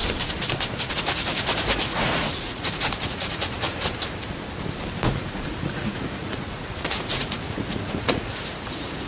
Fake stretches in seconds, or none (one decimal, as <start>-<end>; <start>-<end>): 0.9-3.4; 5.0-9.1